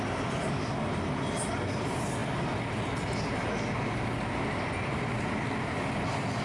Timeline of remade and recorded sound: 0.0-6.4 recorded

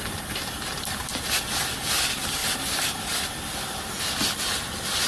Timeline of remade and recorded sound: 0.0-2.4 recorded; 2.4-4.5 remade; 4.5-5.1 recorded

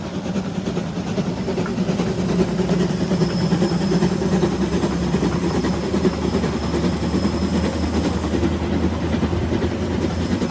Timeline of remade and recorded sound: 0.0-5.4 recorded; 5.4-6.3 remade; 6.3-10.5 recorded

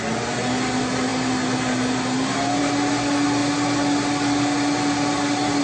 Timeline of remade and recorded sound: 0.0-5.6 recorded